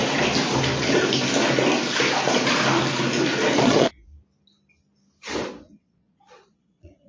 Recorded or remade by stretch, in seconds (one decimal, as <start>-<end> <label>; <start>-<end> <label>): 0.0-3.6 recorded; 3.6-4.1 remade; 4.1-5.5 recorded; 5.5-7.1 remade